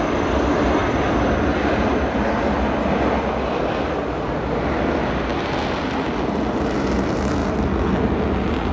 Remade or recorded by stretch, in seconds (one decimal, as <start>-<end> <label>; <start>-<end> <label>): 0.0-8.7 recorded